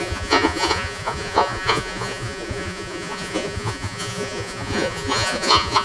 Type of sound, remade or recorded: remade